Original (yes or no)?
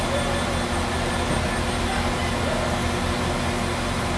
yes